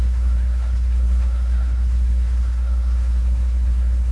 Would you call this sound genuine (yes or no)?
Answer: no